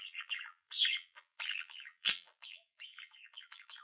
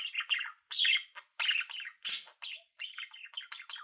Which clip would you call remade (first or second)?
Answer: first